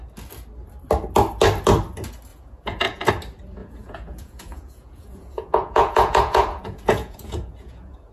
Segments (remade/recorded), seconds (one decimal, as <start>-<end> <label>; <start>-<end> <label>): 0.0-2.3 recorded; 2.3-3.1 remade; 3.1-3.6 recorded; 3.6-8.1 remade